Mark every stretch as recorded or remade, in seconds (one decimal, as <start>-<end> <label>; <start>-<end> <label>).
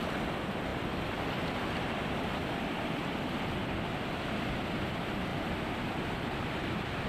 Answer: 0.0-5.3 remade; 5.3-5.9 recorded; 5.9-7.1 remade